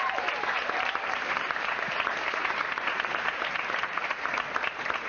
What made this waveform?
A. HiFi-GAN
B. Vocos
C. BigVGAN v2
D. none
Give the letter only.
C